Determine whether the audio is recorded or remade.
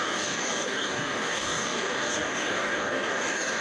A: remade